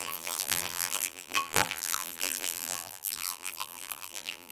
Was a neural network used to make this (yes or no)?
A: yes